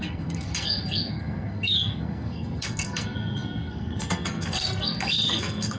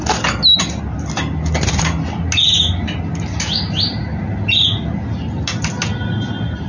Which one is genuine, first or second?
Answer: second